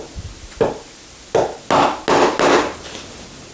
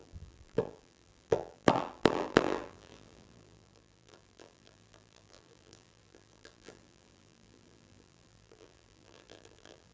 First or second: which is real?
first